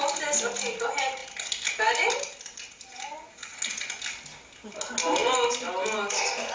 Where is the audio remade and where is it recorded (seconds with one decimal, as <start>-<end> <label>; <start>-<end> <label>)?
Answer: 0.0-6.5 recorded